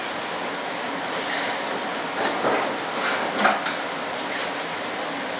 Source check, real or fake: real